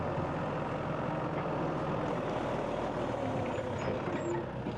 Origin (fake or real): real